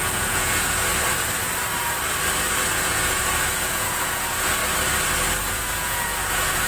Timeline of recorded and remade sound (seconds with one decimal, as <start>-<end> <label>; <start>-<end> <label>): 0.0-0.9 remade; 0.9-2.8 recorded; 2.8-4.6 remade; 4.6-5.5 recorded; 5.5-6.7 remade